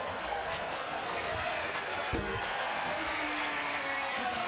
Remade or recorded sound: remade